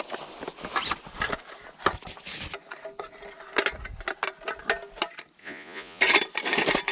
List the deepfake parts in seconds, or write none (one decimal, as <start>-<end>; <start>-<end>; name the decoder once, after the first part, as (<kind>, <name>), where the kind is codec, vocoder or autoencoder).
5.4-6.0 (vocoder, Vocos)